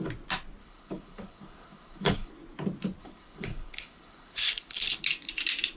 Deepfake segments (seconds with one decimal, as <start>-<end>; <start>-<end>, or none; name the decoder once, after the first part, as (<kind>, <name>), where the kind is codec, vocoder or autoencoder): 0.6-2.3 (codec, HILCodec); 3.0-5.0